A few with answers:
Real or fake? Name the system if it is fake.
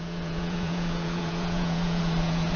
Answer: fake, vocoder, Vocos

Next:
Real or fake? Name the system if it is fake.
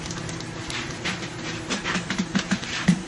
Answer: fake, vocoder, BigVGAN v2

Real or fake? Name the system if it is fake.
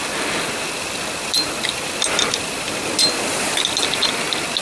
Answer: real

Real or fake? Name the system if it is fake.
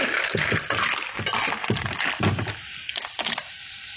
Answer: real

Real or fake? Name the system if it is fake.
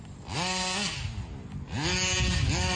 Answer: real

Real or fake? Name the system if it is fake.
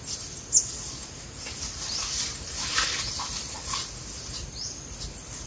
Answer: real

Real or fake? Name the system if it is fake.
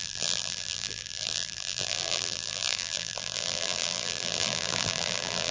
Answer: fake, vocoder, BigVGAN v2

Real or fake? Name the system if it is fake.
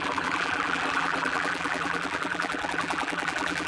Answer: fake, vocoder, BigVGAN v2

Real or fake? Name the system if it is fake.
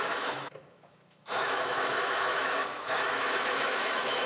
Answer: fake, autoencoder, DAC-VAE